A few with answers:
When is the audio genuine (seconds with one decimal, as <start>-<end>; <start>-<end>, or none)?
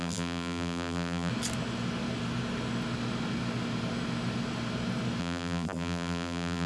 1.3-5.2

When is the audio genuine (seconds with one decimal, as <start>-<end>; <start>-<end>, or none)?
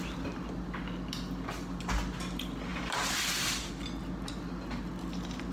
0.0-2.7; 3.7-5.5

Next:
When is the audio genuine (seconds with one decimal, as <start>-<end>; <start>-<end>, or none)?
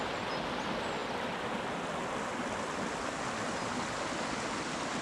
0.0-5.0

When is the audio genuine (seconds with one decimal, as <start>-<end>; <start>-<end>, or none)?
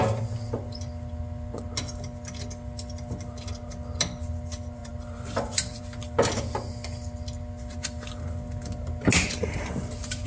0.0-4.8; 5.8-10.3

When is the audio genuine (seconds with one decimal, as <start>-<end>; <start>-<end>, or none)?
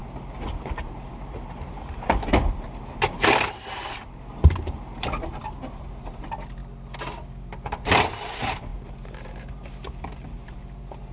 0.0-0.5; 6.6-7.4